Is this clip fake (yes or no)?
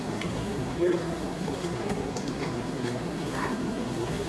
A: yes